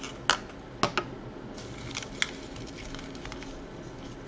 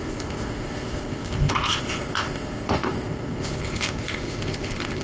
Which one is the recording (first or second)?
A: first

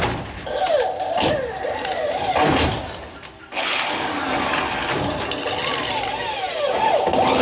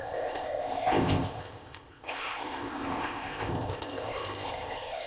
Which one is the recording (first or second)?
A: first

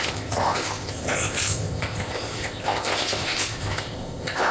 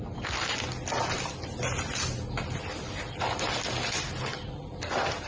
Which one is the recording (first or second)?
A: second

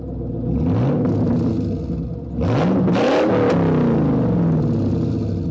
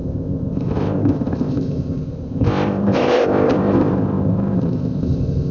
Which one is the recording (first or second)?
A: first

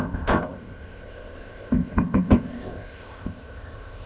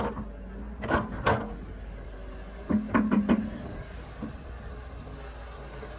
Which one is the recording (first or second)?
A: second